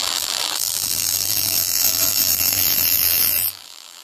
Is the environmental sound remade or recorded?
remade